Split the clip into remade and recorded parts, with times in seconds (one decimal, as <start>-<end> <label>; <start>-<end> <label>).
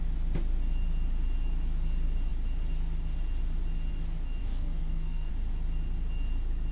0.0-4.4 recorded; 4.4-5.3 remade; 5.3-6.7 recorded